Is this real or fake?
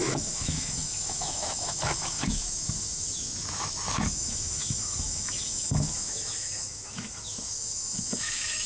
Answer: fake